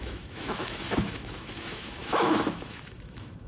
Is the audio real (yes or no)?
no